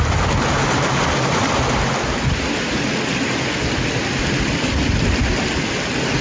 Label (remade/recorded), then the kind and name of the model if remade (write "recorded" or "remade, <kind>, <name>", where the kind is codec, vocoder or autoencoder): recorded